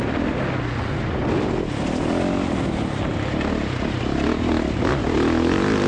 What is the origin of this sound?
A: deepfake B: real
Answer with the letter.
B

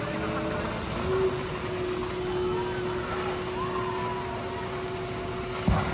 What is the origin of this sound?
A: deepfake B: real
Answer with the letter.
B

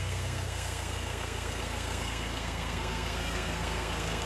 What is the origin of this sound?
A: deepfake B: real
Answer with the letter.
A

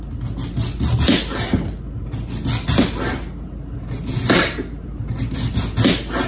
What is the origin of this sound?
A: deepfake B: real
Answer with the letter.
B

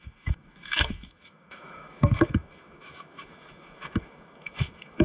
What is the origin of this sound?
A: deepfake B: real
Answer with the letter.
A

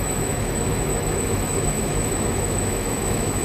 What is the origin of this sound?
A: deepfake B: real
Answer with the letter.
A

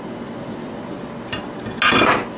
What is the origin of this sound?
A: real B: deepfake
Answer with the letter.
A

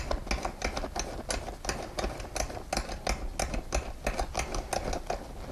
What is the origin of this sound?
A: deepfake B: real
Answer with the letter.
B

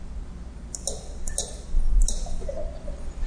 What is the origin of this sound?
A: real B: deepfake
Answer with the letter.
A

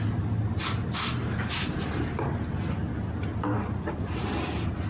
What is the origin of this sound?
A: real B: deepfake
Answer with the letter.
A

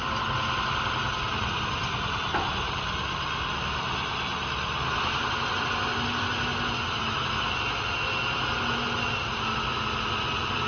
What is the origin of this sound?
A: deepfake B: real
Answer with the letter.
B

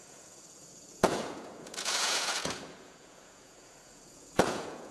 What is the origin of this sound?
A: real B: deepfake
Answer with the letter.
B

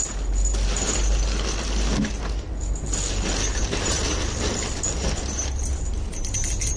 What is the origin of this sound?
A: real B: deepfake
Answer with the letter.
A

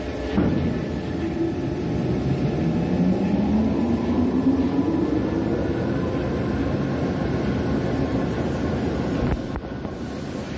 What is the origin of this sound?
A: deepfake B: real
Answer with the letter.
B